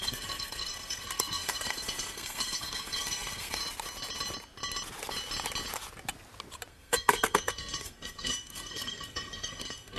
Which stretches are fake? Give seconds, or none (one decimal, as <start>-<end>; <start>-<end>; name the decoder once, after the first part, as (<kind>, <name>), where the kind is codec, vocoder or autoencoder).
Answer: 0.0-3.6 (codec, SNAC); 6.7-10.0